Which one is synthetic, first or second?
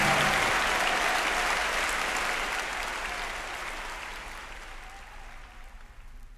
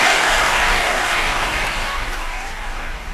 second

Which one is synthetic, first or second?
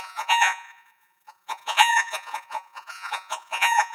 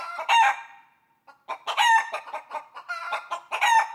first